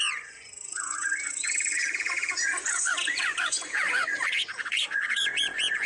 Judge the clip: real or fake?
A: fake